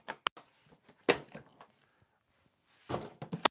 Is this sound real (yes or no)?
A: yes